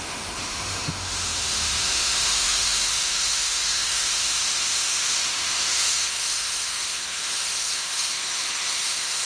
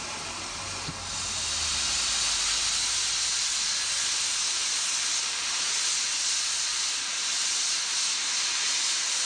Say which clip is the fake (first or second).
first